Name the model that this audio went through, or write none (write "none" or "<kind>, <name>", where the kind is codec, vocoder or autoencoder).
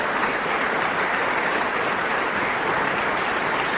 none